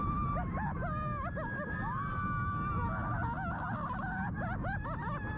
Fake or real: real